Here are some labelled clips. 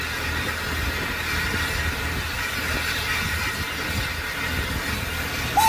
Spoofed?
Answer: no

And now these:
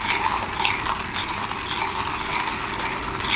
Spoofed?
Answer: no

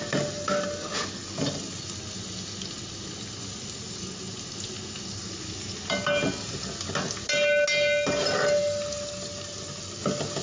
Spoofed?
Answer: no